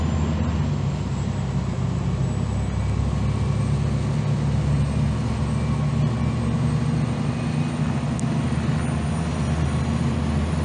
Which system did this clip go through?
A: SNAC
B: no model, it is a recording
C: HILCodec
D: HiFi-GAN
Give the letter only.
B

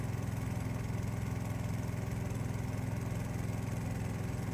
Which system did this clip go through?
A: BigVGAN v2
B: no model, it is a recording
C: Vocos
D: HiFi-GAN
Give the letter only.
B